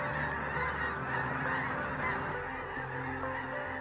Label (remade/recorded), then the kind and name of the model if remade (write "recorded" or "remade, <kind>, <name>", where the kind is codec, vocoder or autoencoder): recorded